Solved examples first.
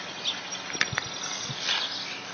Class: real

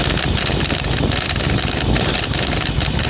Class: real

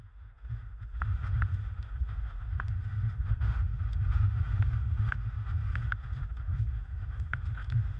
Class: fake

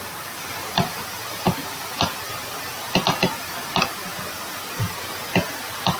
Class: real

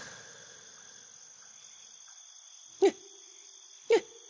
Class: real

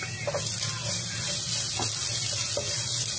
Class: real